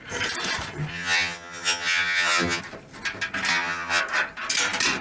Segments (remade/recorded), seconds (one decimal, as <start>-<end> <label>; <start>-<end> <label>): 0.0-0.9 recorded; 0.9-2.6 remade; 2.6-3.5 recorded; 3.5-4.0 remade; 4.0-5.0 recorded